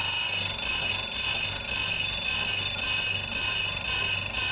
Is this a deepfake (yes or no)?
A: no